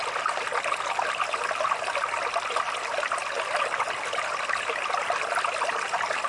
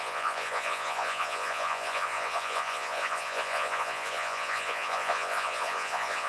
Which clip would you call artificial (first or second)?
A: second